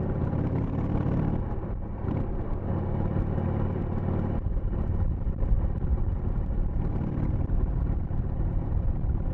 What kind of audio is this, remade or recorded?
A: remade